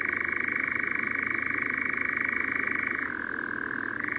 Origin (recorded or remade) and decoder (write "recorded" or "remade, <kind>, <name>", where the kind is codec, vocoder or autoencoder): recorded